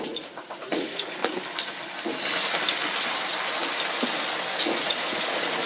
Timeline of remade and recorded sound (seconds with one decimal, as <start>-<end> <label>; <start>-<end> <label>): 0.0-1.2 remade; 1.2-4.6 recorded; 4.6-5.7 remade